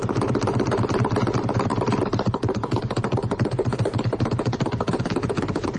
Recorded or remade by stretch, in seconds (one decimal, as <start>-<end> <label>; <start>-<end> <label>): 0.0-5.8 remade